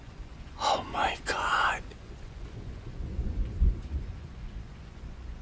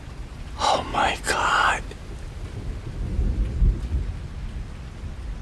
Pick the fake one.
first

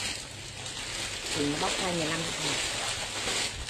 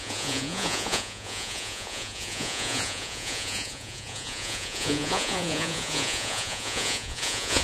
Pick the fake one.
second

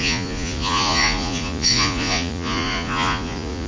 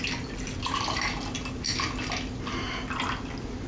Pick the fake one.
first